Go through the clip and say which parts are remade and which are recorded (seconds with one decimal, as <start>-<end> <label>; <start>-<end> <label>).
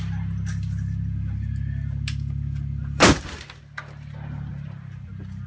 0.0-2.8 recorded; 2.8-3.6 remade; 3.6-4.5 recorded; 4.5-5.1 remade; 5.1-5.5 recorded